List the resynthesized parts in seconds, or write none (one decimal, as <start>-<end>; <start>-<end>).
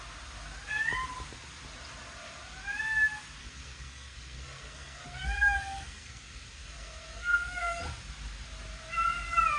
3.4-7.8